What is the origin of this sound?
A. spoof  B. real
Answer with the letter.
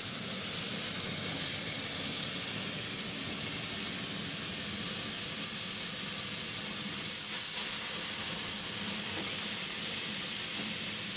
B